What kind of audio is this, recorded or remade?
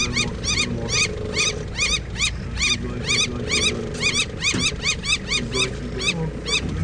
recorded